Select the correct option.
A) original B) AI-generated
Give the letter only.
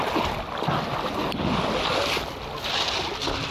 A